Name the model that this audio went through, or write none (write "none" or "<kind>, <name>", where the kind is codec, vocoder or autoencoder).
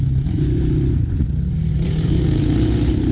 none